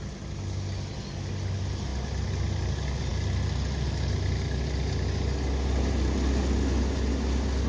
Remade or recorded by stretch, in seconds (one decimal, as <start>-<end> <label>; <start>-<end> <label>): 0.0-7.7 recorded